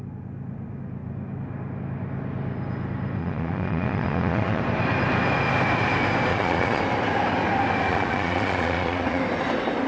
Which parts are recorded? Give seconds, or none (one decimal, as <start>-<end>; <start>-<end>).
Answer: 0.0-3.2; 4.6-6.3; 6.8-7.9; 9.2-9.9